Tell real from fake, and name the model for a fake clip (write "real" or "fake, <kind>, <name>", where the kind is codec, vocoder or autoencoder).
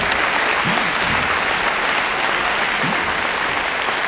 real